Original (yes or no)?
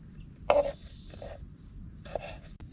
yes